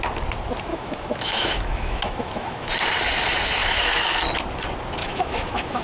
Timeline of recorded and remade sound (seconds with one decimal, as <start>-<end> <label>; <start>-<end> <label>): 0.0-0.7 recorded; 0.7-2.7 remade; 2.7-3.6 recorded; 3.6-4.2 remade; 4.2-5.0 recorded; 5.0-5.8 remade